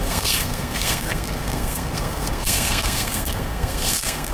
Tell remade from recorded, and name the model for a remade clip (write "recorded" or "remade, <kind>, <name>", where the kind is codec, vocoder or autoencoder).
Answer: remade, codec, SNAC